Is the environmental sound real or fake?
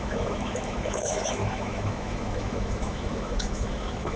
fake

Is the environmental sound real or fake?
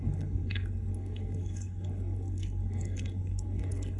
fake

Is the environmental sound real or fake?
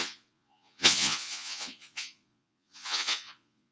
fake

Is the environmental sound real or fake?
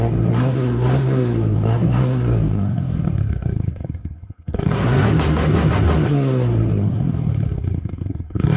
fake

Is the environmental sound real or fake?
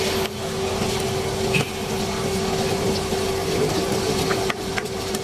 real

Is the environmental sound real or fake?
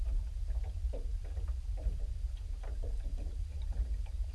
real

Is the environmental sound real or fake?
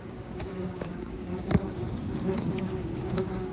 fake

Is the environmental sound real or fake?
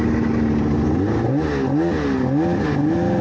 real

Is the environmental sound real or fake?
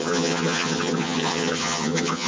fake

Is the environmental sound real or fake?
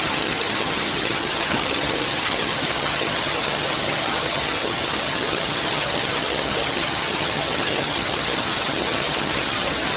fake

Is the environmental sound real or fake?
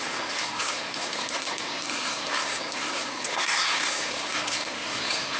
fake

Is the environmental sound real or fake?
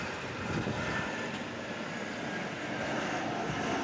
real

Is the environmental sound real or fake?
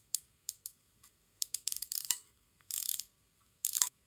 fake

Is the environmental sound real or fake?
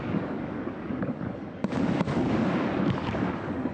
fake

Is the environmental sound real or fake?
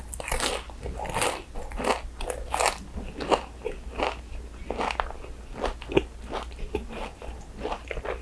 real